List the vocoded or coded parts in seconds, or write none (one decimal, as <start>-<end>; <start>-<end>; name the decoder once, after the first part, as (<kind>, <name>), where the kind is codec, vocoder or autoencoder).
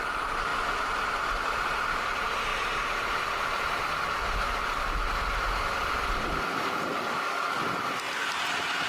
6.9-7.6 (codec, DAC)